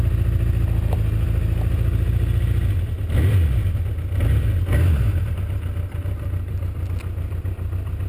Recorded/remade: recorded